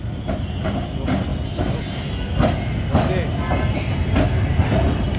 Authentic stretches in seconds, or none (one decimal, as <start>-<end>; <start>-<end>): 0.0-5.2